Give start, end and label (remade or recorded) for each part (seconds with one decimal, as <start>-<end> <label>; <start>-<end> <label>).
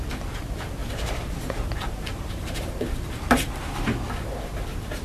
0.0-0.8 recorded; 0.8-3.8 remade; 3.8-5.0 recorded